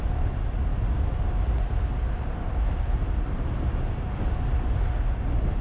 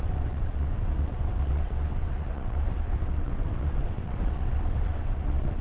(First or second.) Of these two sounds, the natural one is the first